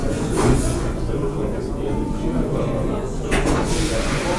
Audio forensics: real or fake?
fake